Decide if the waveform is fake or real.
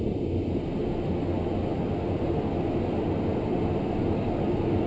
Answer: real